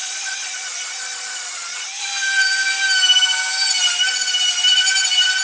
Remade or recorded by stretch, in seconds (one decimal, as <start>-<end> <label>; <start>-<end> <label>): 0.0-2.0 remade; 2.0-5.4 recorded